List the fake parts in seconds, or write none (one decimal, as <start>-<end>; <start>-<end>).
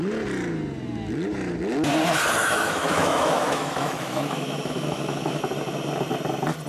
2.4-5.4